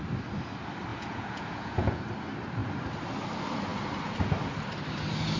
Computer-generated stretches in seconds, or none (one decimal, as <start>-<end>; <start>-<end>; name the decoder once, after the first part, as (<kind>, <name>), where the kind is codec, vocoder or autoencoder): 0.9-2.0 (vocoder, Vocos)